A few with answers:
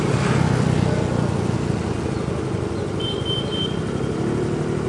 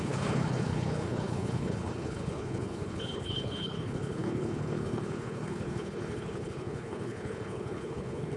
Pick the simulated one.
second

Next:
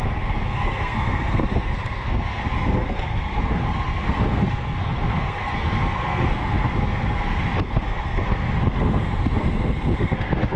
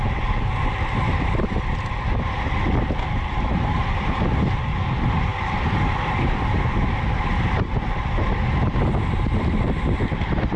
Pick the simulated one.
first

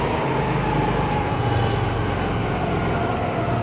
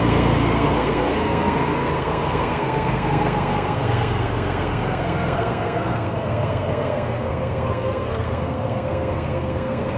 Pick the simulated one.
second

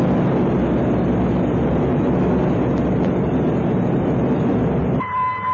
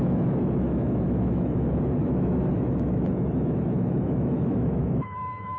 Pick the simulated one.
second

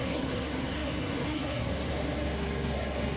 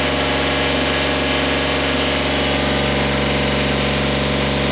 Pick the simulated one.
first